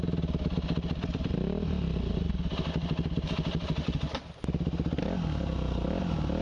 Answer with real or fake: real